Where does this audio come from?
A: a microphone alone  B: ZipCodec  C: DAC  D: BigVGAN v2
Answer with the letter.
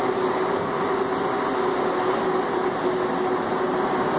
A